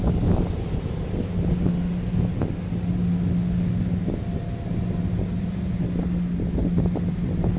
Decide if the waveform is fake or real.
real